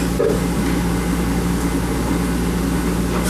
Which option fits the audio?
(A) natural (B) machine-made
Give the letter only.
A